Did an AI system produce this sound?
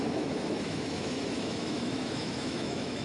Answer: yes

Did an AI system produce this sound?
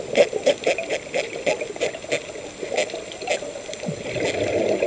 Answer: no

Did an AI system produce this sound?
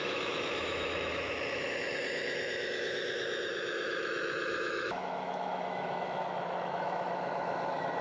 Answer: yes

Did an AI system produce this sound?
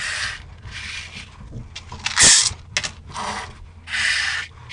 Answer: no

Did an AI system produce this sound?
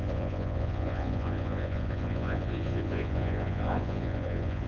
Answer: yes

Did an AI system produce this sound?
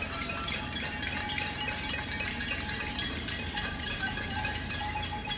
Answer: yes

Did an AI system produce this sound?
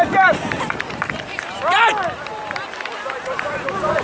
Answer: no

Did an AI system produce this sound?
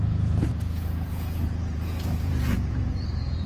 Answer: yes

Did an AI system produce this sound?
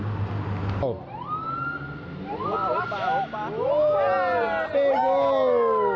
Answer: no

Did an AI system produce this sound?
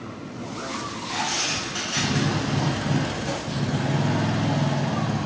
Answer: no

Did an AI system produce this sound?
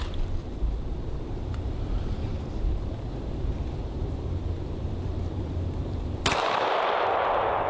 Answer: yes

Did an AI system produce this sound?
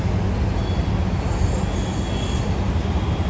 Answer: no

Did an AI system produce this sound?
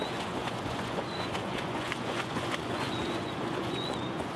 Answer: yes